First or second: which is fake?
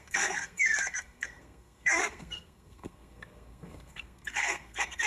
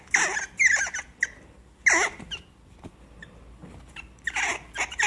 first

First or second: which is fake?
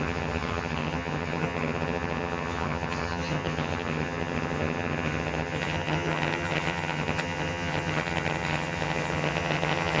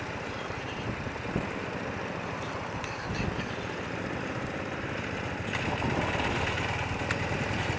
first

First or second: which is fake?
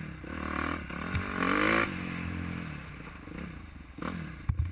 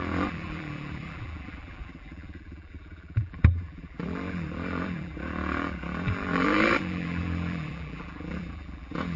second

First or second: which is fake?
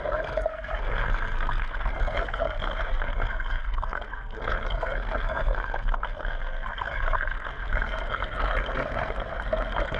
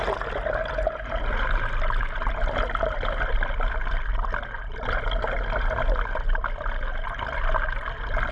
first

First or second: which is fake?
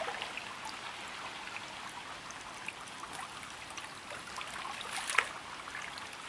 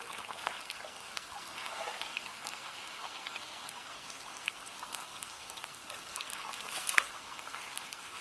second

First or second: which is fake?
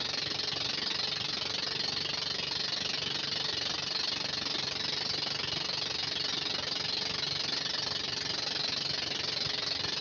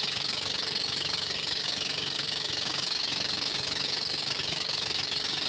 second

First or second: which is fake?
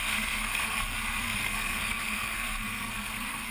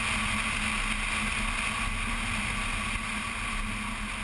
first